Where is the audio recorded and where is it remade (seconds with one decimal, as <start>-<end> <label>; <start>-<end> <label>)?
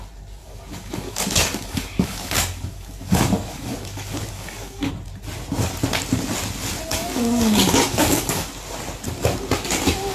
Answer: 0.0-0.4 recorded; 0.4-4.9 remade; 4.9-6.9 recorded; 6.9-8.5 remade; 8.5-10.1 recorded